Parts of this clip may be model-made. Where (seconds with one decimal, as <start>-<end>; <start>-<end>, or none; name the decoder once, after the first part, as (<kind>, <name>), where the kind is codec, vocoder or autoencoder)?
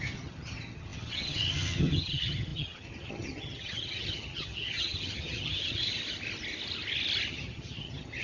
0.0-5.9 (vocoder, HiFi-GAN); 7.3-8.2